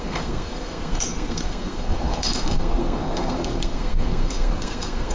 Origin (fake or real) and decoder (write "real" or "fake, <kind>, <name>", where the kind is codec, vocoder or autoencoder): fake, codec, SNAC